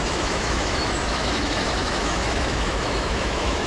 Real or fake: fake